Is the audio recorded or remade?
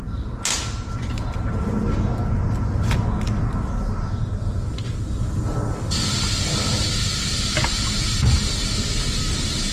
recorded